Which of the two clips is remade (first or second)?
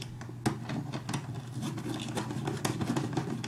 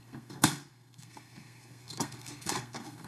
second